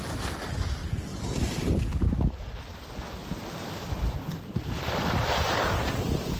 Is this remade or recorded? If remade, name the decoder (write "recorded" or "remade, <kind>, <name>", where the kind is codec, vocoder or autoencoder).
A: recorded